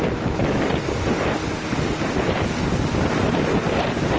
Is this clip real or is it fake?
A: real